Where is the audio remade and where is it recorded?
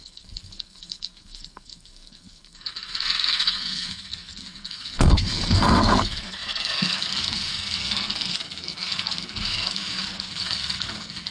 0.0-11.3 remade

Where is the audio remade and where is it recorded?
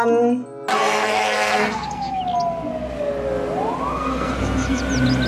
0.0-0.7 recorded; 0.7-2.2 remade; 2.2-3.9 recorded; 3.9-4.8 remade; 4.8-5.3 recorded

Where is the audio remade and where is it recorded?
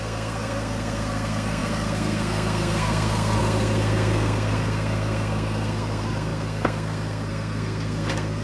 0.0-8.4 remade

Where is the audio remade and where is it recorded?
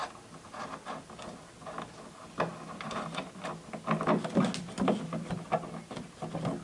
0.0-6.6 recorded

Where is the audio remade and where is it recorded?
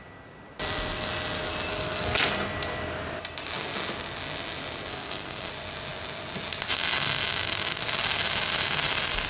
0.0-1.7 recorded; 1.7-2.3 remade; 2.3-4.9 recorded; 4.9-5.5 remade; 5.5-9.3 recorded